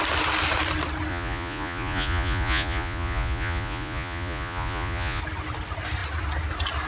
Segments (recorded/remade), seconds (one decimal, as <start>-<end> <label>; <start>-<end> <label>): 0.0-1.1 recorded; 1.1-5.2 remade; 5.2-6.9 recorded